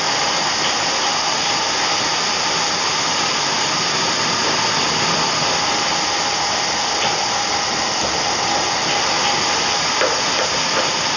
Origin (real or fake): real